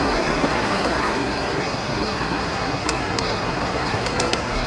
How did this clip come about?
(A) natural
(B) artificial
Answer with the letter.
B